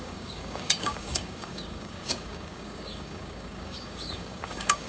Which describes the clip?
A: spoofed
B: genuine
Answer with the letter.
A